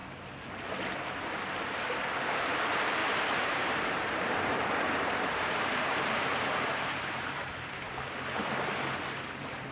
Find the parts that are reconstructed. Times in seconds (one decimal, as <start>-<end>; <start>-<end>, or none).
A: 3.0-7.9